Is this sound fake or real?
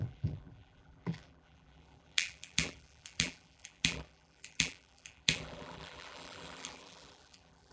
fake